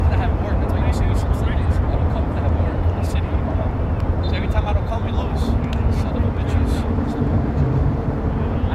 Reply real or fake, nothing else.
fake